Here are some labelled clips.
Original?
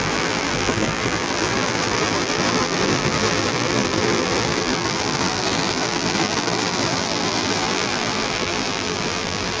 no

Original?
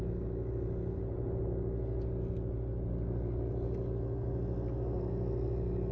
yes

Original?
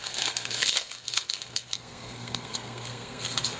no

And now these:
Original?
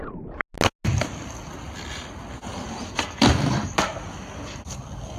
yes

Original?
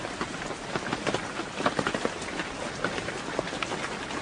yes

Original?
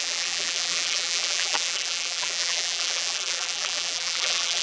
no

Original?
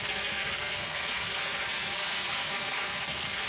no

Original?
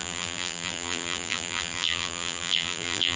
no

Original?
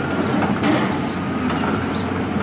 yes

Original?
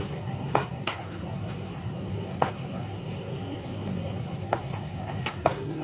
no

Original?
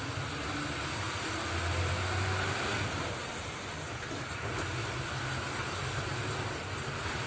yes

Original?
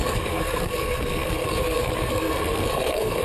no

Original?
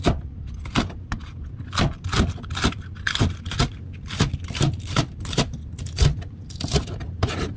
yes